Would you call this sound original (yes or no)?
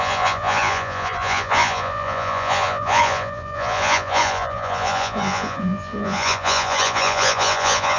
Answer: no